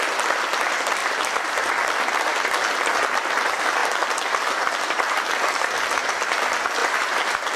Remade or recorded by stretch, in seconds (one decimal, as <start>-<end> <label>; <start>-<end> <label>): 0.0-1.0 recorded; 1.0-1.7 remade; 1.7-6.8 recorded; 6.8-7.6 remade